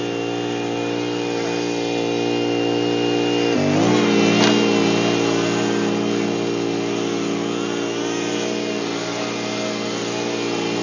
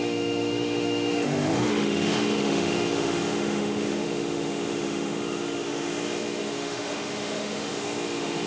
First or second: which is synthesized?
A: second